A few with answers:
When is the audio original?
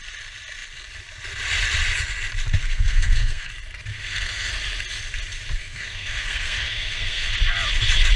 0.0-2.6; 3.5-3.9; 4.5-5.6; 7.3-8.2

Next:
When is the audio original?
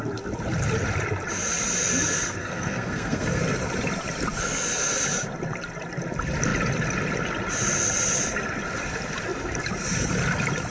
0.0-2.4; 3.4-10.7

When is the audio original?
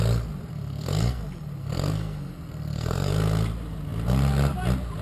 0.0-0.5; 1.2-1.6; 3.1-5.0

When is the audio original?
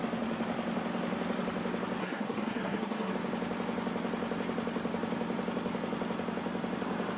0.0-2.0; 3.1-7.2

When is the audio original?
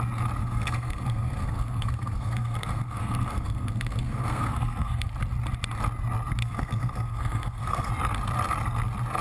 0.0-0.4; 5.1-6.4; 7.9-9.2